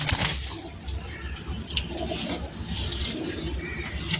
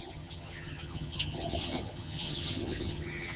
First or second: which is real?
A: first